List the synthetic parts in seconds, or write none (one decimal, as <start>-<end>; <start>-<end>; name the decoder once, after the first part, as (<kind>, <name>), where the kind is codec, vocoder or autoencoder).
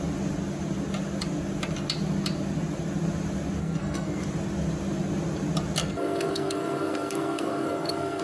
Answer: 3.6-4.2 (codec, SNAC); 5.8-8.2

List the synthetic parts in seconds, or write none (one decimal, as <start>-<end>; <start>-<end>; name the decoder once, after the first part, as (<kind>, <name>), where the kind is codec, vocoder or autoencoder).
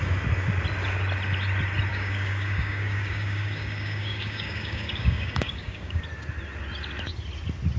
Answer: 1.9-6.0 (codec, DAC)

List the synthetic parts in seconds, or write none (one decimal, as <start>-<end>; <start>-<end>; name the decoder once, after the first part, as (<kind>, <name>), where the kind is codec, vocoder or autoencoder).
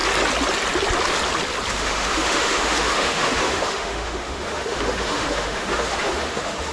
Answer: 1.7-6.7 (autoencoder, DAC-VAE)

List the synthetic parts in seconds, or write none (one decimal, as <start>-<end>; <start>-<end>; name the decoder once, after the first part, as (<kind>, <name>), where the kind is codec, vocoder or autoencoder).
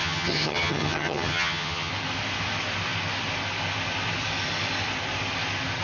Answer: 0.0-1.9 (vocoder, HiFi-GAN)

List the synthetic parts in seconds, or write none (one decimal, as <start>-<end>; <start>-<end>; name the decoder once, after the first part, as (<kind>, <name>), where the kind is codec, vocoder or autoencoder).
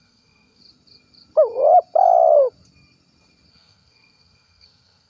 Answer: 0.0-0.6 (codec, SNAC); 3.5-5.1